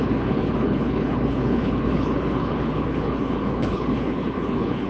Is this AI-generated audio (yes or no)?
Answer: yes